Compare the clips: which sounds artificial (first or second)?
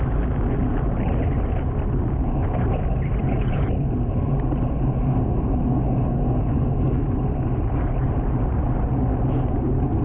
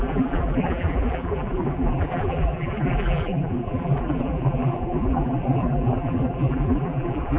second